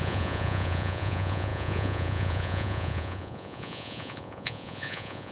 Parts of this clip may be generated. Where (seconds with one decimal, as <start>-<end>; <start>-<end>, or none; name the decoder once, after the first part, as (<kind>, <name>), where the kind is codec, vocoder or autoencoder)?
0.0-5.3 (vocoder, Vocos)